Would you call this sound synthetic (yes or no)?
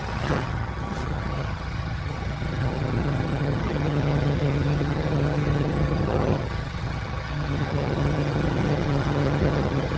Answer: yes